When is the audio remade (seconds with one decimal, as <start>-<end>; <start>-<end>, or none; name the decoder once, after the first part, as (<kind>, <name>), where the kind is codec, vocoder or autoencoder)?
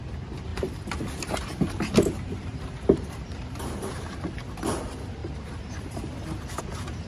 0.5-4.8 (vocoder, BigVGAN v2); 5.2-6.6